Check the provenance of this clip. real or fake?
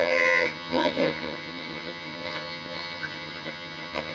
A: fake